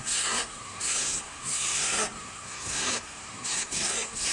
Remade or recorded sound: remade